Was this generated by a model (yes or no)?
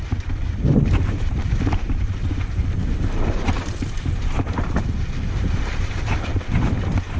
yes